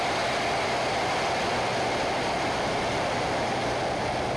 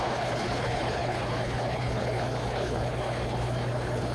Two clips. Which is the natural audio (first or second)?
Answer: first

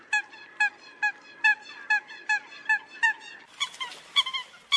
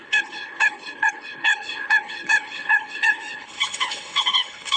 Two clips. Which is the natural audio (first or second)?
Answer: first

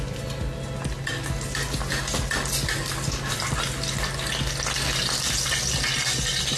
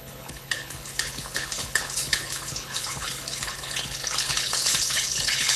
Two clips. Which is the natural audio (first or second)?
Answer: first